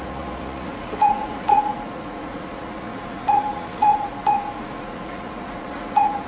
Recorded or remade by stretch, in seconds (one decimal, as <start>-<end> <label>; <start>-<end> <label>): 0.0-6.3 remade